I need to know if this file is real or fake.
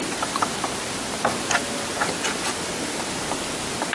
real